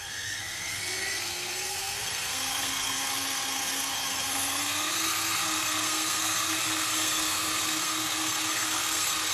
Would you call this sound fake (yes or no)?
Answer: yes